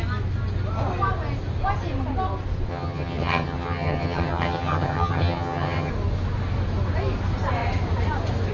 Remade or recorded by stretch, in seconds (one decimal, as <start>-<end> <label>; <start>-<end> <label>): 0.0-2.7 recorded; 2.7-5.9 remade; 5.9-8.5 recorded